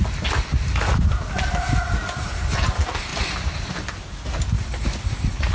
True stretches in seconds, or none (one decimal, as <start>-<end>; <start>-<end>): 0.0-5.5